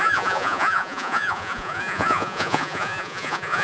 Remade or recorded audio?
remade